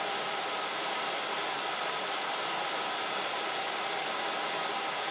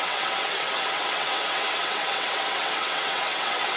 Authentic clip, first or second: first